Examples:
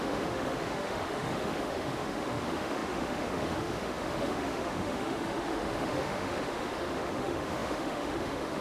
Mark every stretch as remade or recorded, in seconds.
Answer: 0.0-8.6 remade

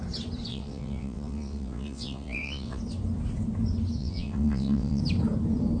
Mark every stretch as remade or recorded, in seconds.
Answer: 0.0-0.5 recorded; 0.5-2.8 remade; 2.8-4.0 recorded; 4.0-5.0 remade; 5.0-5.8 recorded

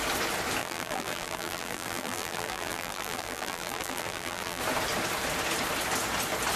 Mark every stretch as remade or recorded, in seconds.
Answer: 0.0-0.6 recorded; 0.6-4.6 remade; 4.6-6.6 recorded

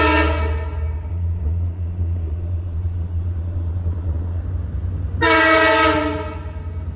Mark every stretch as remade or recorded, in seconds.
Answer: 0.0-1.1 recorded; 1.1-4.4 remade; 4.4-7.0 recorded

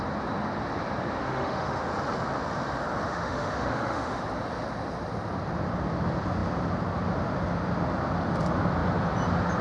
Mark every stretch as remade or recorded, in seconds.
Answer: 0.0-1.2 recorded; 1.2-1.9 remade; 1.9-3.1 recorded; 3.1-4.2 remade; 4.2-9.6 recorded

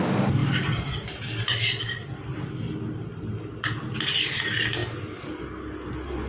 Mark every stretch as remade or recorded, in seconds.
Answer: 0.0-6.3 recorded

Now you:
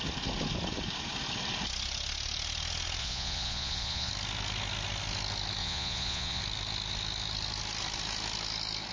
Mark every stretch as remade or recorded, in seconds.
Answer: 0.0-3.0 recorded; 3.0-4.1 remade; 4.1-5.6 recorded; 5.6-6.4 remade; 6.4-8.9 recorded